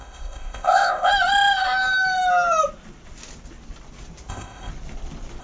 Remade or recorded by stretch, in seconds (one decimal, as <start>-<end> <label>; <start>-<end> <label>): 0.0-1.1 remade; 1.1-4.3 recorded; 4.3-4.7 remade; 4.7-5.4 recorded